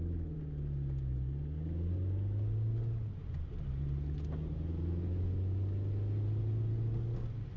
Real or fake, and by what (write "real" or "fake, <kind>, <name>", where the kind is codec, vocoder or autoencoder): real